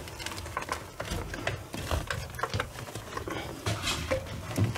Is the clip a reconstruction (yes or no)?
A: no